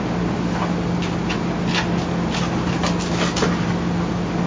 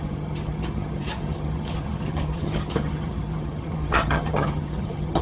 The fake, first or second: second